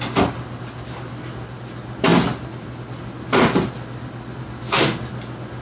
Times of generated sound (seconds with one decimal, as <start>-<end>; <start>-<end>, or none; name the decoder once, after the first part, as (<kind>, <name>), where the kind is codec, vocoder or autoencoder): none